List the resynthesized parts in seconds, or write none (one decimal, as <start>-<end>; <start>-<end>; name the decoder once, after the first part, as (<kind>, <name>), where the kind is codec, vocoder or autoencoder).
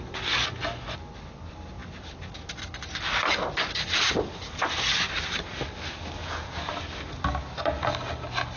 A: 6.2-6.7 (vocoder, Vocos)